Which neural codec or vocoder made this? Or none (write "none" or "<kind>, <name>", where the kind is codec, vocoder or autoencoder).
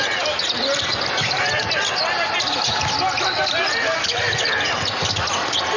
none